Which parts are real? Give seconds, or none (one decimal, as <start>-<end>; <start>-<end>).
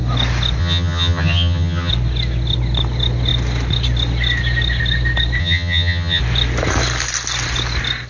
0.0-0.6; 1.9-5.4; 6.2-8.1